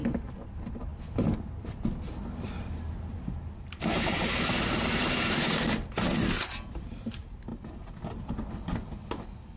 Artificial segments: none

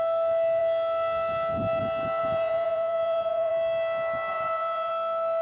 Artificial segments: 2.2-3.5 (vocoder, Vocos); 4.3-4.9